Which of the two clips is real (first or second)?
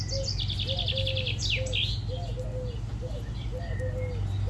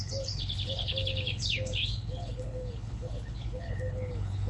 first